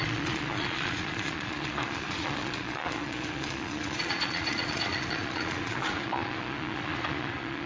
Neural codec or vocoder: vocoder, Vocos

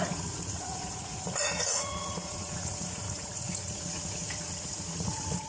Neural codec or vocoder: vocoder, Vocos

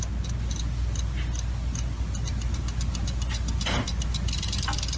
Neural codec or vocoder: none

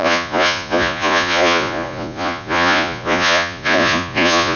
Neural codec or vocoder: vocoder, Vocos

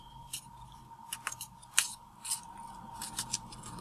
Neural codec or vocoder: none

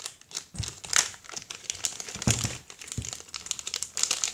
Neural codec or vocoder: none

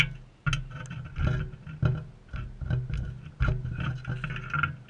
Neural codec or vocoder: none